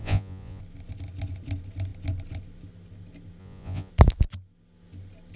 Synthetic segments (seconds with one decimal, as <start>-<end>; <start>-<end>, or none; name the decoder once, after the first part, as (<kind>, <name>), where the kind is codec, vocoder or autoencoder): 0.0-0.6 (vocoder, Vocos); 3.4-3.9